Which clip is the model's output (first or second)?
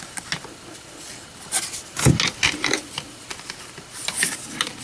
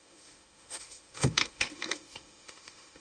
second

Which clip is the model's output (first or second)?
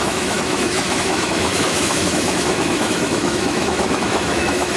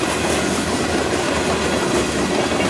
first